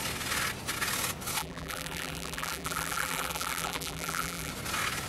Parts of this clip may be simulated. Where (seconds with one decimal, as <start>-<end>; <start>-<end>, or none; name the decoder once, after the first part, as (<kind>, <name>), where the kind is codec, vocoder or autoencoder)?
1.4-4.5 (vocoder, BigVGAN v2)